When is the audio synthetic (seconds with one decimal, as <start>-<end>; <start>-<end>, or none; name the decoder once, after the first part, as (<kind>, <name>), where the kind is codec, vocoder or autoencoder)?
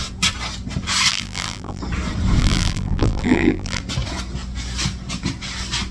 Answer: 1.1-1.8 (vocoder, BigVGAN v2); 2.4-3.8